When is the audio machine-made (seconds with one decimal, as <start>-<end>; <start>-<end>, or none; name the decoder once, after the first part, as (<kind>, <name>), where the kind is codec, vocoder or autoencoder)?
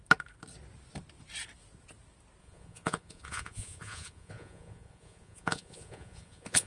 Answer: 2.4-6.7 (vocoder, Vocos)